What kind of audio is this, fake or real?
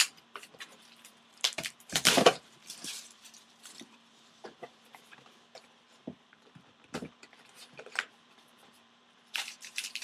fake